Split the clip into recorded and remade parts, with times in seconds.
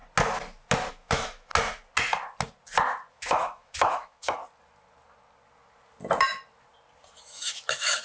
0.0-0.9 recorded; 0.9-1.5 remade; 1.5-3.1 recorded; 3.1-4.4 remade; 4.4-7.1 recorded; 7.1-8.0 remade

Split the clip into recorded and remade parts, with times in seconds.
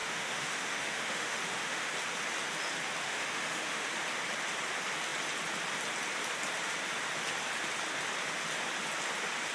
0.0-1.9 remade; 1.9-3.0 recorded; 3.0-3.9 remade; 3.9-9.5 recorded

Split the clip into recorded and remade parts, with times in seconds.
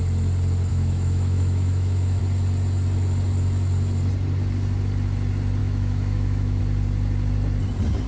0.0-0.7 recorded; 0.7-2.2 remade; 2.2-5.6 recorded; 5.6-6.6 remade; 6.6-8.1 recorded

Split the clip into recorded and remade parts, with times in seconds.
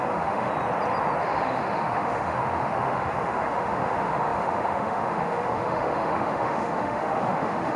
0.0-0.5 remade; 0.5-1.2 recorded; 1.2-7.8 remade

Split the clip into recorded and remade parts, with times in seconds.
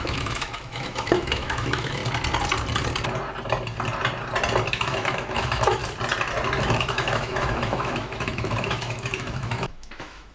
0.0-2.0 remade; 2.0-4.7 recorded; 4.7-5.8 remade; 5.8-6.6 recorded; 6.6-10.3 remade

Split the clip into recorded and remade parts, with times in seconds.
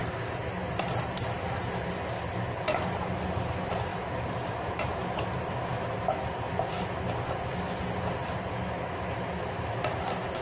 0.0-10.4 recorded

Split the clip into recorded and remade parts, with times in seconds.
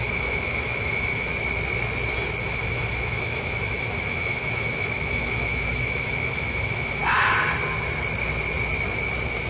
0.0-1.3 remade; 1.3-2.4 recorded; 2.4-7.0 remade; 7.0-9.5 recorded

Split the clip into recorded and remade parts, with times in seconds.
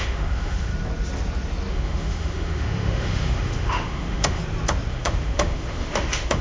0.0-0.7 remade; 0.7-1.7 recorded; 1.7-4.4 remade; 4.4-4.9 recorded; 4.9-6.4 remade